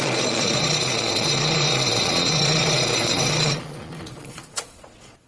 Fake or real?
fake